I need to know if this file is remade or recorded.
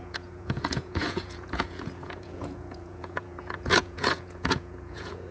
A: remade